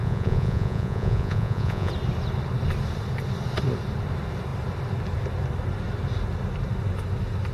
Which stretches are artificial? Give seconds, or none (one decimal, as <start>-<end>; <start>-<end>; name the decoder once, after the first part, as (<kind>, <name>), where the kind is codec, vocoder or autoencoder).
0.0-1.9 (vocoder, Vocos)